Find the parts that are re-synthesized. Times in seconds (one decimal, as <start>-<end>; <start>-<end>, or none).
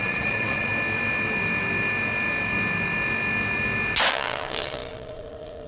0.0-0.7; 4.1-5.7